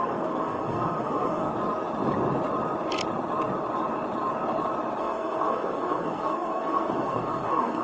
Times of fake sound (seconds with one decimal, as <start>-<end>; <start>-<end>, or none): 0.0-1.5; 5.0-7.8